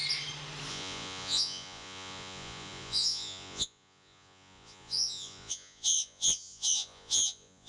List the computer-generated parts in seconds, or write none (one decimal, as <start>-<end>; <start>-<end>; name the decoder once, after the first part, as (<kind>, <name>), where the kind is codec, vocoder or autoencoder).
0.7-7.7 (vocoder, Vocos)